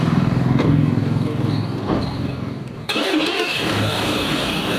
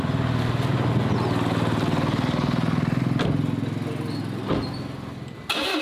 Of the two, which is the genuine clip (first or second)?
second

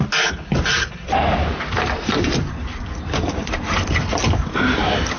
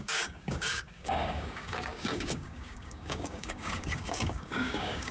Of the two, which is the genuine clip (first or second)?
first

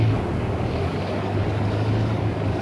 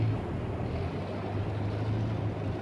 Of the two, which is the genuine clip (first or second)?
second